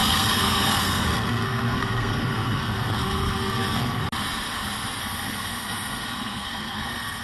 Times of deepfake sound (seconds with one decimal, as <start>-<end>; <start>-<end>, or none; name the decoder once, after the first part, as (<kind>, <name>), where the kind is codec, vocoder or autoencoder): 0.0-4.0 (codec, SNAC); 5.0-7.2